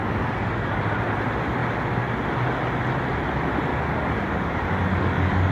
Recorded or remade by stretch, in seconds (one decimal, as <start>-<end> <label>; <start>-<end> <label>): 0.0-0.9 remade; 0.9-3.7 recorded; 3.7-5.5 remade

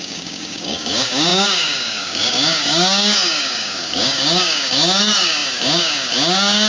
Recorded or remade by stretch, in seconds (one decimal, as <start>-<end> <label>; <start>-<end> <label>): 0.0-6.7 remade

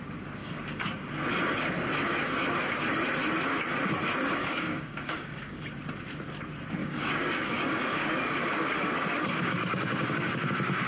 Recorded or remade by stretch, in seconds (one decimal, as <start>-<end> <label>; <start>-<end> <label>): 0.0-0.4 recorded; 0.4-1.1 remade; 1.1-4.4 recorded; 4.4-5.6 remade; 5.6-6.8 recorded; 6.8-10.5 remade; 10.5-10.9 recorded

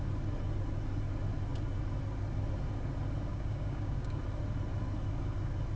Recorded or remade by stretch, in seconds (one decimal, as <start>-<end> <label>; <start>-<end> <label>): 0.0-3.3 recorded; 3.3-4.2 remade; 4.2-5.8 recorded

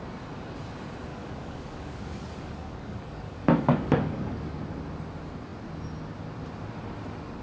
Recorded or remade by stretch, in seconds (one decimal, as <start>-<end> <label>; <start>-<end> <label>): 0.0-1.1 recorded; 1.1-4.6 remade; 4.6-7.4 recorded

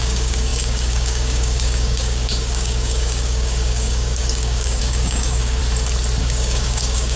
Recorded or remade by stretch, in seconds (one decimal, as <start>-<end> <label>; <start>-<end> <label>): 0.0-5.6 remade; 5.6-6.2 recorded; 6.2-7.2 remade

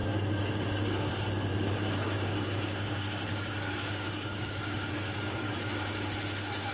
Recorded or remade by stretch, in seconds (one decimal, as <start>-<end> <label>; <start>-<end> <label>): 0.0-1.1 remade; 1.1-1.5 recorded; 1.5-5.5 remade; 5.5-6.7 recorded

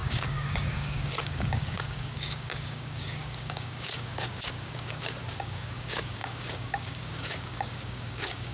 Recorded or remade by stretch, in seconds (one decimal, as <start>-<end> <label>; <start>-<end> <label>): 0.0-8.5 remade